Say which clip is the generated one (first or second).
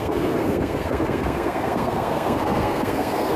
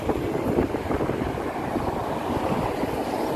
first